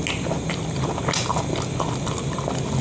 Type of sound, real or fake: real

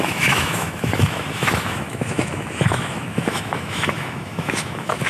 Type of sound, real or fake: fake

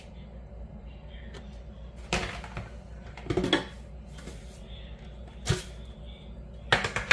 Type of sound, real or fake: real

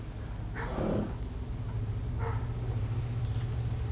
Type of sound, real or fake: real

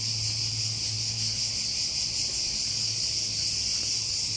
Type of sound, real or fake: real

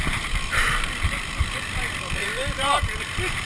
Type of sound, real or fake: real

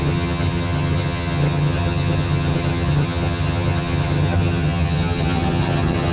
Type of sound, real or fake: fake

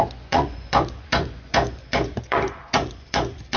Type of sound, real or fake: fake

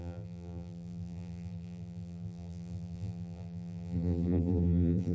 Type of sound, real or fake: fake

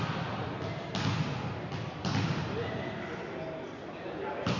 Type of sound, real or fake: real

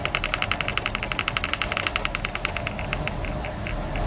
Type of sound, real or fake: real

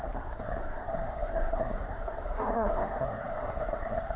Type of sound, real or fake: fake